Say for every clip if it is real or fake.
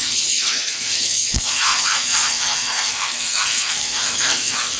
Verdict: fake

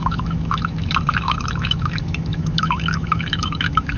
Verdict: fake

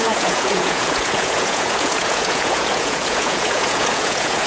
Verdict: fake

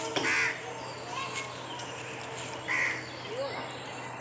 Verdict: real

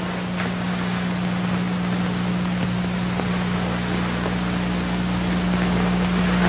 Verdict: real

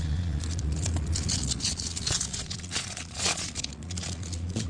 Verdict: fake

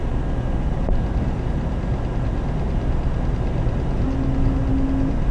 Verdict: real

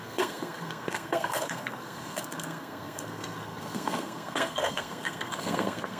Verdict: fake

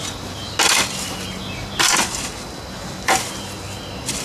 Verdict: real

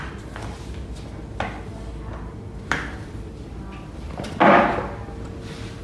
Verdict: real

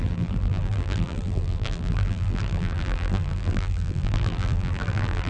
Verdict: fake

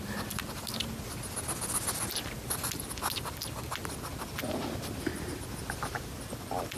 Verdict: real